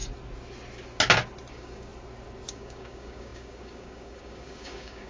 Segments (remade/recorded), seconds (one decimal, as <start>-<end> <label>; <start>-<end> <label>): 0.0-1.5 recorded; 1.5-1.9 remade; 1.9-2.5 recorded; 2.5-5.1 remade